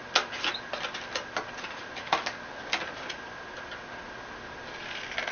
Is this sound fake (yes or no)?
no